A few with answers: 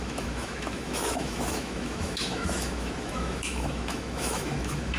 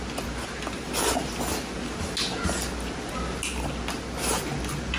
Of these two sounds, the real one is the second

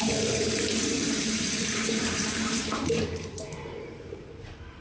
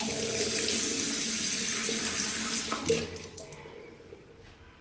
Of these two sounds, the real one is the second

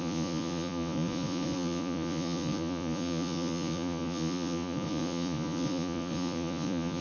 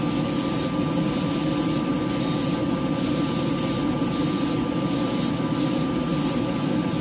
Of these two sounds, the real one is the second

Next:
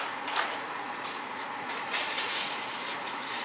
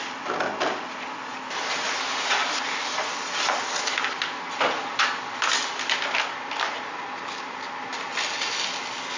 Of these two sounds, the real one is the second